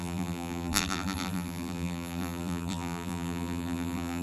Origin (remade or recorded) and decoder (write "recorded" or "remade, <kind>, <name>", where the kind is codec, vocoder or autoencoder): remade, vocoder, BigVGAN v2